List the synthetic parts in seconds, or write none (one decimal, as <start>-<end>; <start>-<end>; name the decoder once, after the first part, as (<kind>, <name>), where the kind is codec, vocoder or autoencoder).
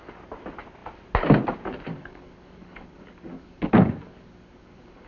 1.9-5.1 (codec, DAC)